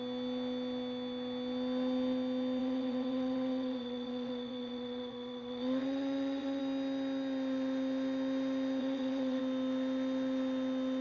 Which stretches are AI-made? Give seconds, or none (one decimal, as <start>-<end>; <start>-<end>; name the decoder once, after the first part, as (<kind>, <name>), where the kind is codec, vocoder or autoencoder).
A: 2.6-6.6 (vocoder, WaveNeXt); 8.8-9.4